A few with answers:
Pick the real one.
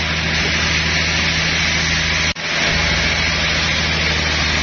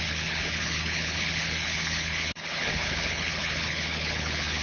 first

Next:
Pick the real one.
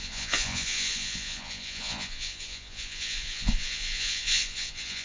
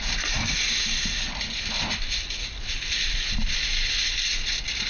second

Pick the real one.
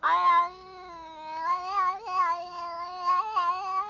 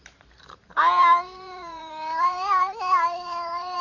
first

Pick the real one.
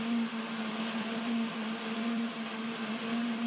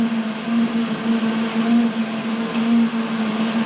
second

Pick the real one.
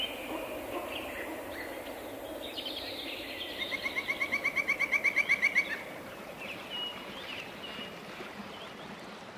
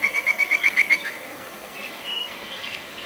first